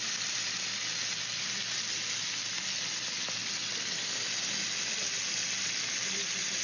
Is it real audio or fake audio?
real